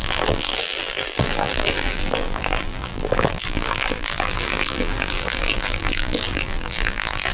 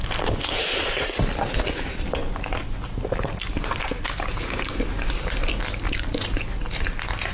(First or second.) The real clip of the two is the second